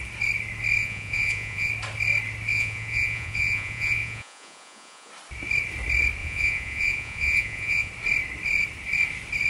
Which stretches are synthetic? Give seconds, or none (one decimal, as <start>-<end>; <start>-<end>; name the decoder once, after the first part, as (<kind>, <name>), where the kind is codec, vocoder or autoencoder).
0.8-1.7 (vocoder, Vocos); 2.5-5.1; 6.2-7.9